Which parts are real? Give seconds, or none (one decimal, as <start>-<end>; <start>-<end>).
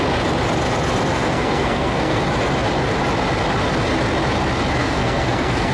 0.0-1.1; 2.2-4.8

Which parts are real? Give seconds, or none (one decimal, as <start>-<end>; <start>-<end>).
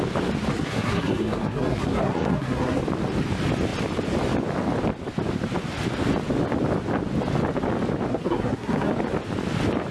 0.0-0.5; 2.8-8.1; 8.9-9.9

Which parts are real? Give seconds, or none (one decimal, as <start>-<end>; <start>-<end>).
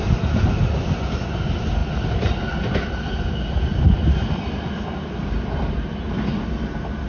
0.0-7.1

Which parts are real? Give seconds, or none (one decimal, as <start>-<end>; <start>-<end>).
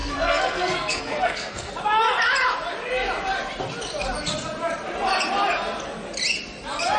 1.7-7.0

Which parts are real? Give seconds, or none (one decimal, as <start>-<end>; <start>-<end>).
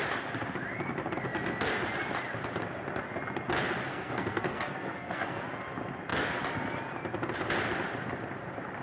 0.0-3.9; 5.4-8.8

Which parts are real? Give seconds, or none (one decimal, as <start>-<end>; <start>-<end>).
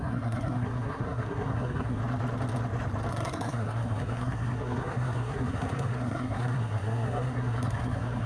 2.0-3.1